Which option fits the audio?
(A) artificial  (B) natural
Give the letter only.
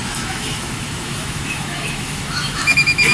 A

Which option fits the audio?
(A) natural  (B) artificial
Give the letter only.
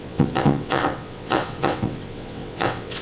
B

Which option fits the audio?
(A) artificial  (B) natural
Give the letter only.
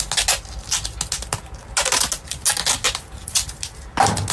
B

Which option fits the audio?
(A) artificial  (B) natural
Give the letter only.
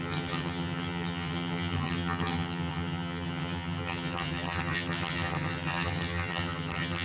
A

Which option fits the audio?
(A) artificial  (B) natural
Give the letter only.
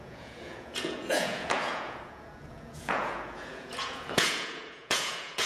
A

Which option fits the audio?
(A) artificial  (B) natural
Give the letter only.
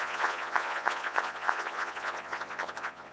A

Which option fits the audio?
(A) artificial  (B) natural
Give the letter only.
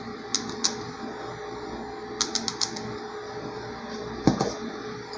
B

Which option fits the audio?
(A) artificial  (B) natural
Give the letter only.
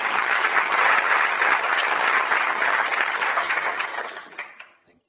A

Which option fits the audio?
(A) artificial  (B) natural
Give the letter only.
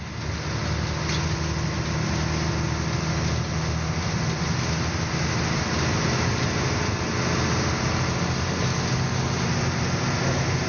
B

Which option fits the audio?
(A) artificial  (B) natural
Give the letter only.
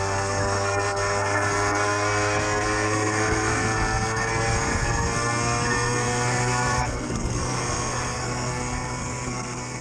A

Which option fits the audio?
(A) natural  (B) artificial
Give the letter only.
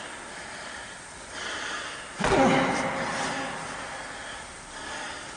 A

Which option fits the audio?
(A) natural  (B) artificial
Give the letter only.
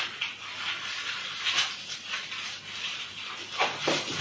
A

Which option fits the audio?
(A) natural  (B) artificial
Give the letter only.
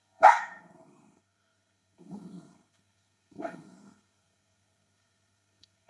B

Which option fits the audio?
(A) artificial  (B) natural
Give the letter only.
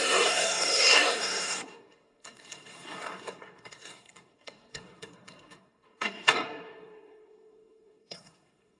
A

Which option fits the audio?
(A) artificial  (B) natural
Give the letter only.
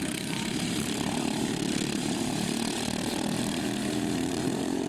A